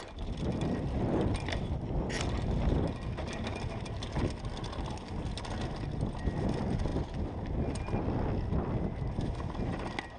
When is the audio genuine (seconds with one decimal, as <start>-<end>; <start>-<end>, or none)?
0.0-10.2